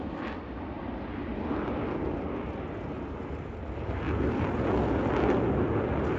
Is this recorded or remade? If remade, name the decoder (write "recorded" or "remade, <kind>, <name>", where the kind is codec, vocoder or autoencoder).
recorded